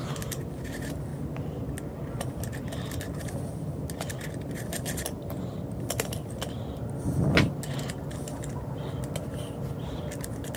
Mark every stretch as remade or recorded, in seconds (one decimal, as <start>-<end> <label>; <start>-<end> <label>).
0.0-10.6 recorded